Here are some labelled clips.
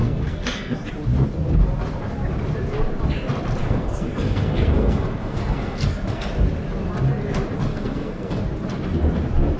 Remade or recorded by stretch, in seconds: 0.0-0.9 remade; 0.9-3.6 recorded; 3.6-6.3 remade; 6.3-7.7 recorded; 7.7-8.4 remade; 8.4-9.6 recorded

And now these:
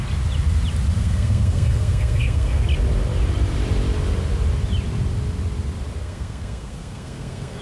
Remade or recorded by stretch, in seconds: 0.0-1.0 recorded; 1.0-2.6 remade; 2.6-6.0 recorded; 6.0-7.6 remade

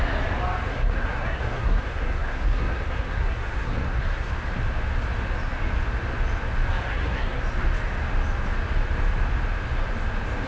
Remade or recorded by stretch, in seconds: 0.0-0.7 recorded; 0.7-4.3 remade; 4.3-6.8 recorded; 6.8-7.4 remade; 7.4-10.5 recorded

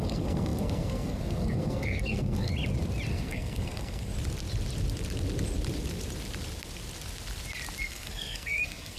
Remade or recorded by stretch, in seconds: 0.0-2.5 remade; 2.5-3.1 recorded; 3.1-4.1 remade; 4.1-7.8 recorded; 7.8-9.0 remade